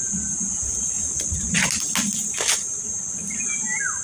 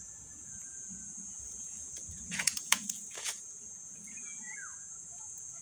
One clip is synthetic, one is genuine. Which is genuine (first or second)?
first